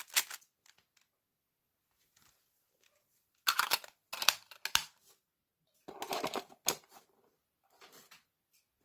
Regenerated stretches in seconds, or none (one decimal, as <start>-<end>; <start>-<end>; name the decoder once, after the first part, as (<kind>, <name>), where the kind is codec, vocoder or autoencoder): 4.8-6.5 (vocoder, BigVGAN v2)